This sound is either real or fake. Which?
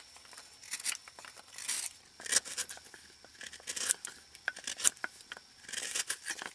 real